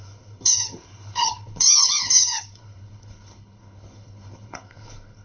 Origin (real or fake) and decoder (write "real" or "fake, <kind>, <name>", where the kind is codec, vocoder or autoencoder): fake, codec, HILCodec